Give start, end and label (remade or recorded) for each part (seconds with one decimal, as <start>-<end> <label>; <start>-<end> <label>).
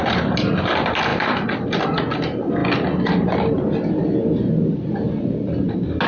0.0-6.1 recorded